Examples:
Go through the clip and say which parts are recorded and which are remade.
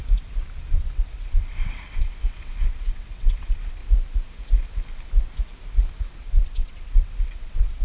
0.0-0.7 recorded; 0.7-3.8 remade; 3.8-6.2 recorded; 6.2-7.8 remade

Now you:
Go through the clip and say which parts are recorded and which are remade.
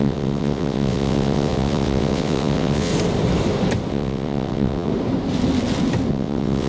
0.0-2.9 remade; 2.9-3.9 recorded; 3.9-4.9 remade; 4.9-6.1 recorded; 6.1-6.7 remade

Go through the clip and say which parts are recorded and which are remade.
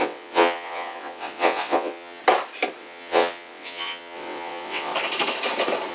0.0-2.2 remade; 2.2-2.8 recorded; 2.8-4.9 remade; 4.9-5.9 recorded